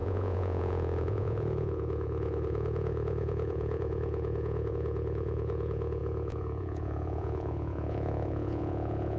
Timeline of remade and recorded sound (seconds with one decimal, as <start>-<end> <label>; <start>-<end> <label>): 0.0-9.2 remade